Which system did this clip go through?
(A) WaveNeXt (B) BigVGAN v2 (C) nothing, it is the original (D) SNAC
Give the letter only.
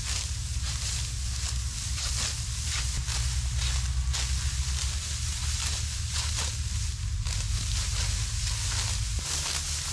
C